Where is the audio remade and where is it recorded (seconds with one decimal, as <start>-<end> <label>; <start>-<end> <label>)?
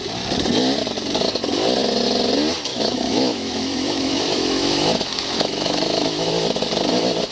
0.0-2.7 recorded; 2.7-6.3 remade; 6.3-7.3 recorded